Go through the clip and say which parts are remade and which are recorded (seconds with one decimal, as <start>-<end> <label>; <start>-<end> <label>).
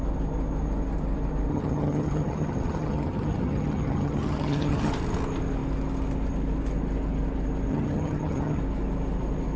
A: 0.0-1.5 recorded; 1.5-4.9 remade; 4.9-7.7 recorded; 7.7-8.6 remade; 8.6-9.6 recorded